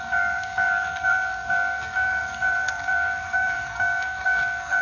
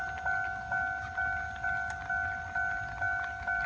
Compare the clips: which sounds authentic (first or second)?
second